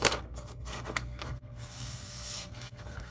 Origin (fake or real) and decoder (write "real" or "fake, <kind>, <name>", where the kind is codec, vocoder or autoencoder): fake, codec, SNAC